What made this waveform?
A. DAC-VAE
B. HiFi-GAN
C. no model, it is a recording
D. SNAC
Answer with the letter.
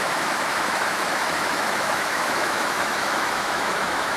A